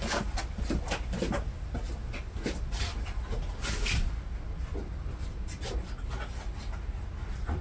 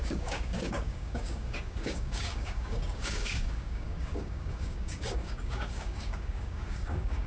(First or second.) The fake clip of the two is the second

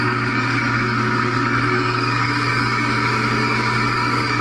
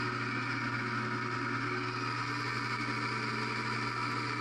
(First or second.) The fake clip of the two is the first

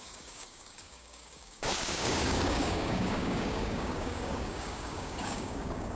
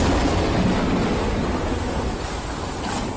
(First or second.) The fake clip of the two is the first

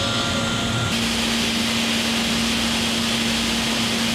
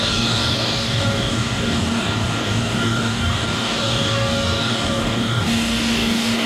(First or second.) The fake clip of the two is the second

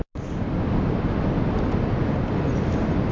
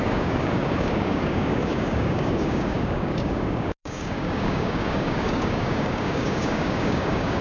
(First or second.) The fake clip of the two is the second